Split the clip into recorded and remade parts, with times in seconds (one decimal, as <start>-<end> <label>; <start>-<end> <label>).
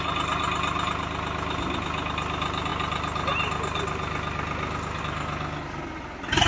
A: 0.0-6.5 recorded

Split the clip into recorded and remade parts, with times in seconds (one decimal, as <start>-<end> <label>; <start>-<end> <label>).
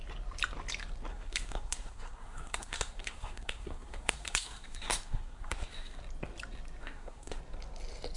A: 0.0-1.1 recorded; 1.1-6.0 remade; 6.0-6.8 recorded; 6.8-7.4 remade; 7.4-8.2 recorded